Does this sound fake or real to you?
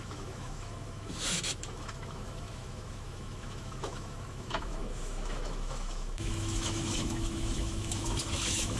fake